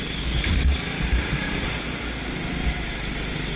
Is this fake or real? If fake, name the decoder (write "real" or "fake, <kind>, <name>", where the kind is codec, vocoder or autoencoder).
real